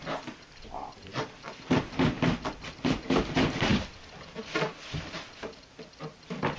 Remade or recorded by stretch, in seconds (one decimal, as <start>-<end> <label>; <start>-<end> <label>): 0.0-6.6 recorded